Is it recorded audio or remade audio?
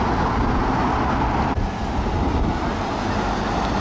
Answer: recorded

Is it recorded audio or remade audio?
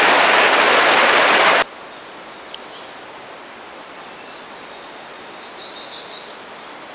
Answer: recorded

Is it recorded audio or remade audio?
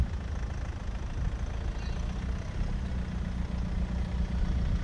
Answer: recorded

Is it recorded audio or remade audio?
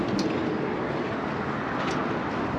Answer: recorded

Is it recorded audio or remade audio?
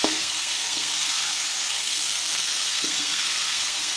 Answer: remade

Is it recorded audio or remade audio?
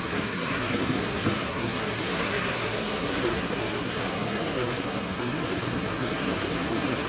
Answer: remade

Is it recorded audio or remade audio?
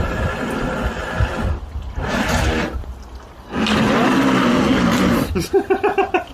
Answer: recorded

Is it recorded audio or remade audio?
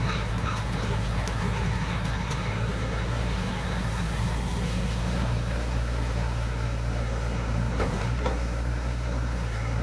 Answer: remade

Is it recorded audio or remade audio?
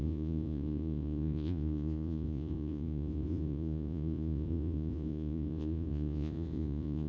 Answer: remade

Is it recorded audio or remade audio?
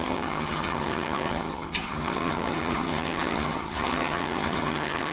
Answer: remade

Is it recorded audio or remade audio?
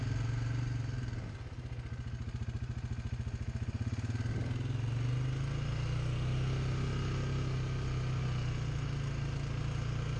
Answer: recorded